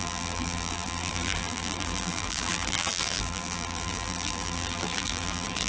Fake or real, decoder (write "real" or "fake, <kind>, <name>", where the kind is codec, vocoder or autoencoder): fake, vocoder, BigVGAN v2